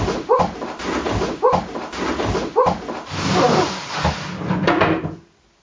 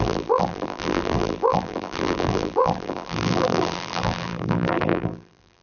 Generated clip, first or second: second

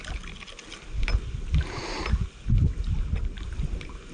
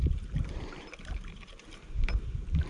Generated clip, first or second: second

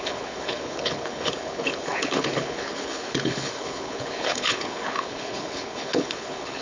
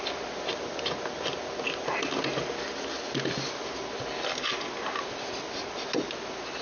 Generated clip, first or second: first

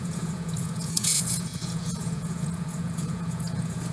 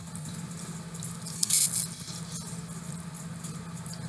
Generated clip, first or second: first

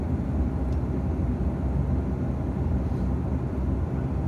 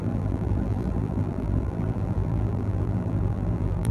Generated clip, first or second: second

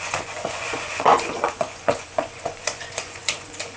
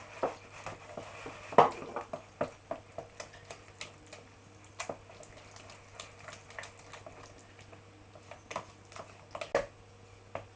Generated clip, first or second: first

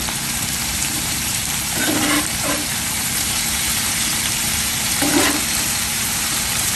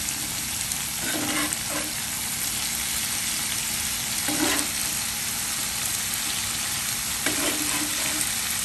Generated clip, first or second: first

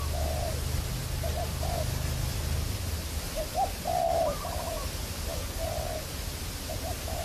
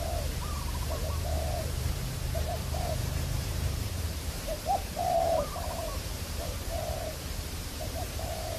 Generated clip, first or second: second